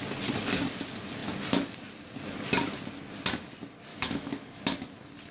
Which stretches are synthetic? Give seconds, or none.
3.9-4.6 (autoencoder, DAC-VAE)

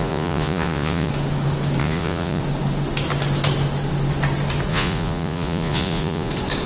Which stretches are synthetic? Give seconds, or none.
0.0-1.1 (vocoder, Vocos); 1.8-2.4; 4.7-6.3